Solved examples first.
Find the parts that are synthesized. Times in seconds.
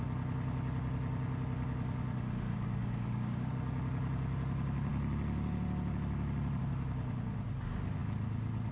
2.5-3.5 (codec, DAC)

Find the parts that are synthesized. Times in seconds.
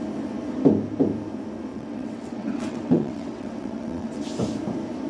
1.7-4.2 (vocoder, WaveNeXt)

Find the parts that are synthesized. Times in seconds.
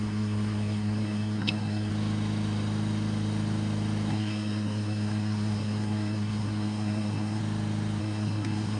0.0-1.9 (codec, SNAC); 4.1-7.4; 8.0-8.8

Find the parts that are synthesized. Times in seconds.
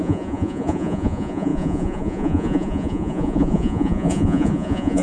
0.0-5.0 (vocoder, Vocos)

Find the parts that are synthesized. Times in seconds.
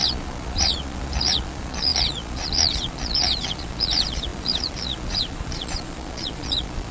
0.0-6.9 (vocoder, Vocos)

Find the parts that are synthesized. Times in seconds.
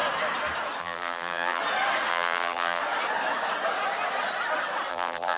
0.8-1.6 (vocoder, BigVGAN v2); 2.1-2.8; 4.9-5.4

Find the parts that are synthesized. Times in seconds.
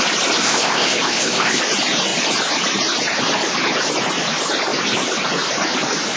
0.4-1.6 (codec, ZipCodec)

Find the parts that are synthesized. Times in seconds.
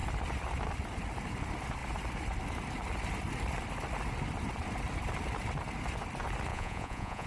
6.5-7.3 (vocoder, Vocos)